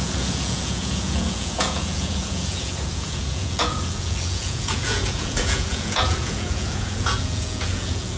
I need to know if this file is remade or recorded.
remade